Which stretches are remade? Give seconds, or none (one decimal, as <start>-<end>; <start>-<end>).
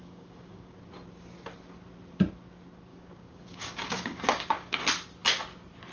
0.0-0.9; 2.9-4.8